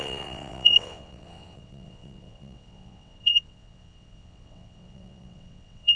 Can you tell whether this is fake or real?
fake